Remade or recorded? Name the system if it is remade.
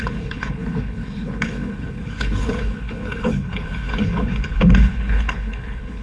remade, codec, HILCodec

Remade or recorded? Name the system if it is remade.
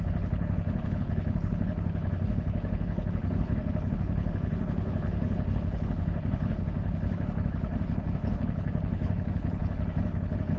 remade, codec, HILCodec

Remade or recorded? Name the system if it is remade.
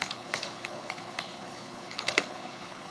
remade, codec, HILCodec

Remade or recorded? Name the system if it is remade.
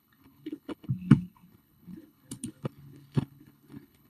remade, codec, HILCodec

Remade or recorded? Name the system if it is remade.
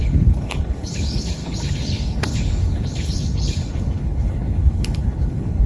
remade, codec, HILCodec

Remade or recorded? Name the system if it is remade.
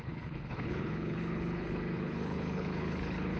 remade, codec, HILCodec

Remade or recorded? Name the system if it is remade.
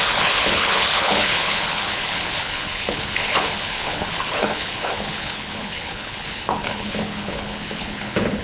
remade, codec, HILCodec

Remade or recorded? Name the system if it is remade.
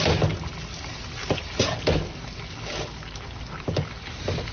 recorded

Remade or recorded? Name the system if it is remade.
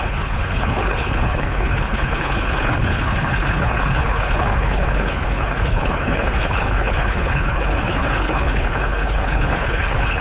remade, codec, HILCodec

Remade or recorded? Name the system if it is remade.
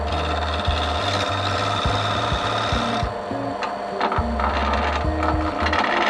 recorded